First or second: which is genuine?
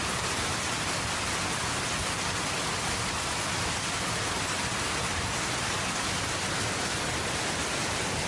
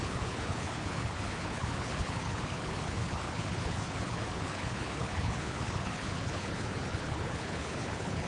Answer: first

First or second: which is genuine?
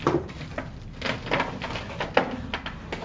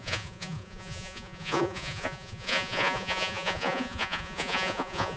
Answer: first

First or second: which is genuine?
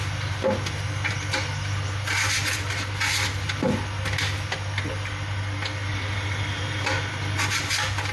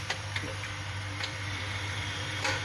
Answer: first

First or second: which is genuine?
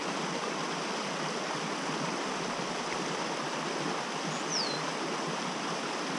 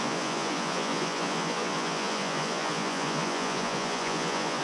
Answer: first